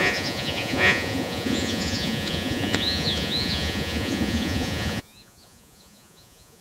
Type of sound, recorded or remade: remade